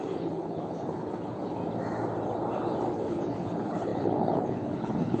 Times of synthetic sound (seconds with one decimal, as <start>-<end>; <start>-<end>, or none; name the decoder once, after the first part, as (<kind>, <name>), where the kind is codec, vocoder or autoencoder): 0.0-1.6 (codec, HILCodec); 2.9-5.2